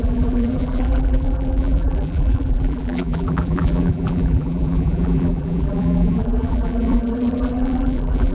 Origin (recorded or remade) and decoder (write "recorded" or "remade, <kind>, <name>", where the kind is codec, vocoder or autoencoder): remade, vocoder, BigVGAN v2